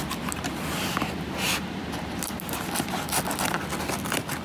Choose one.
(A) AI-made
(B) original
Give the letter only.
B